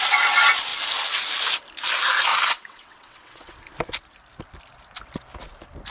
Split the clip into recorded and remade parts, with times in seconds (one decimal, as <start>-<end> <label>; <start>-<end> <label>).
0.0-2.3 recorded; 2.3-3.5 remade; 3.5-5.9 recorded